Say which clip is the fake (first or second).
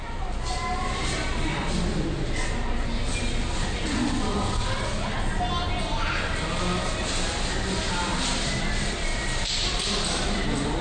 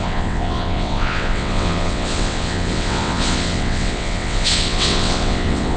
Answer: second